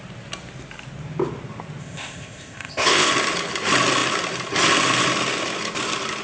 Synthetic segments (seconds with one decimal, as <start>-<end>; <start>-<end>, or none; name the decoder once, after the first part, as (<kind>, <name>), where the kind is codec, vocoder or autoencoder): 1.8-3.1 (codec, ZipCodec)